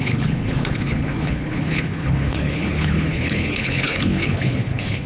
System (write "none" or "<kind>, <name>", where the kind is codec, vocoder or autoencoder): codec, HILCodec